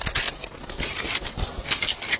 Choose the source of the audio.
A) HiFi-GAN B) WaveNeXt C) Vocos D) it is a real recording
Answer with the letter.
D